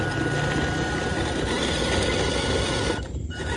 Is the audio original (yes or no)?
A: yes